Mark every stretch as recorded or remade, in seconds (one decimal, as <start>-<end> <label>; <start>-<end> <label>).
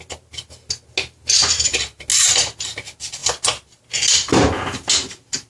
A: 0.0-5.5 recorded